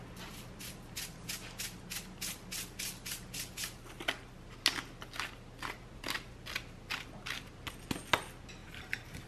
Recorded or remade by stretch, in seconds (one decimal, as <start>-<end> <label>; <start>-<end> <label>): 0.0-9.3 recorded